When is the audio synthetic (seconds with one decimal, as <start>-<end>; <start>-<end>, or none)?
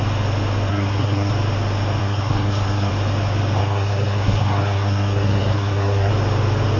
0.7-1.3; 2.0-2.9; 3.6-6.1